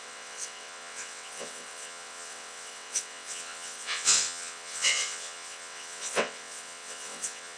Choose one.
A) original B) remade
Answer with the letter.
B